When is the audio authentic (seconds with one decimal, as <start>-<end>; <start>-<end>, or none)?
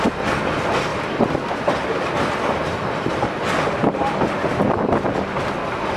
0.0-6.0